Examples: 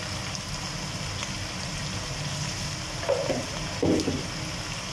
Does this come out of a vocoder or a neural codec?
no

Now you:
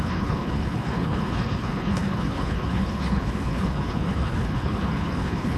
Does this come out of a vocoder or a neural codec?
yes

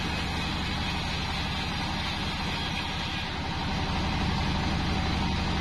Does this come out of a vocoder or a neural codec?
no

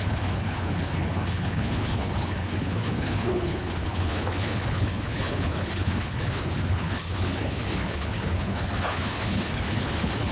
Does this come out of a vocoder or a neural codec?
yes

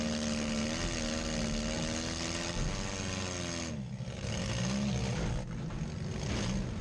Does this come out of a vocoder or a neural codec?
no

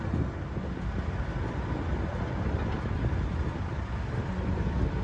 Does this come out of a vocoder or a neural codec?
no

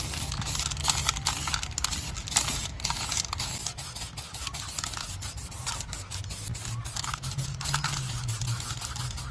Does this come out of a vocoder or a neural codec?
no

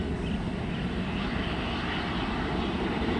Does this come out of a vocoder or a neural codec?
no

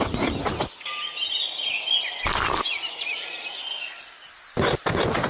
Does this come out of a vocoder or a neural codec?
no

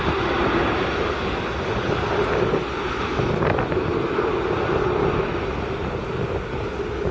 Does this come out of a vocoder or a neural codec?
no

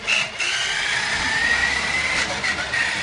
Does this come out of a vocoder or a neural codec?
no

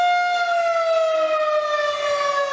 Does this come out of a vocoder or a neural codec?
no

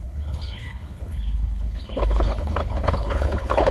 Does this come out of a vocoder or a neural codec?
yes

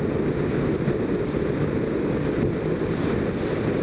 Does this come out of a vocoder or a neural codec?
no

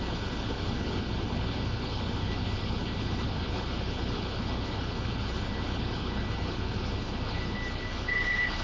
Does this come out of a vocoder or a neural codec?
yes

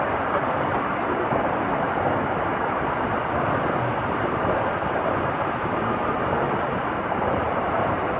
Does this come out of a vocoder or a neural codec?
no